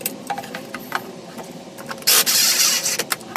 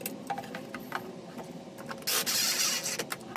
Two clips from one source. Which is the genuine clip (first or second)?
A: second